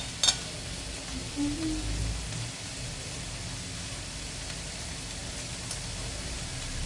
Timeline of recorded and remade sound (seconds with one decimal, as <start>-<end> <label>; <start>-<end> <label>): 0.0-6.9 recorded

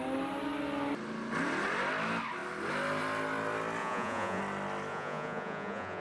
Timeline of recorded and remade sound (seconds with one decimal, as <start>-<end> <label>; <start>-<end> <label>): 0.0-3.8 recorded; 3.8-4.4 remade; 4.4-4.9 recorded; 4.9-6.0 remade

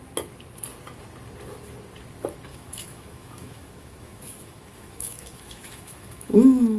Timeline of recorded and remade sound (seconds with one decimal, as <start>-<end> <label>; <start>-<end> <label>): 0.0-2.5 recorded; 2.5-6.8 remade

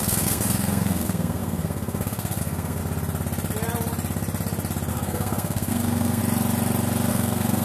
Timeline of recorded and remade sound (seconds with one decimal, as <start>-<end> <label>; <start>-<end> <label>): 0.0-2.8 remade; 2.8-4.9 recorded; 4.9-6.2 remade; 6.2-7.1 recorded; 7.1-7.6 remade